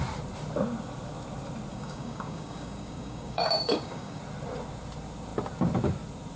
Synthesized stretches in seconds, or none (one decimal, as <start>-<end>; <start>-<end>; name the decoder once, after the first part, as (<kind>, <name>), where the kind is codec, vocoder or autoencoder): 1.7-4.2 (codec, DAC)